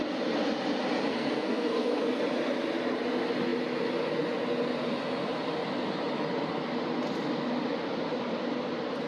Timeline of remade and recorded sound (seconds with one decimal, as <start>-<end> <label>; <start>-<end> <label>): 0.0-1.1 recorded; 1.1-2.2 remade; 2.2-9.1 recorded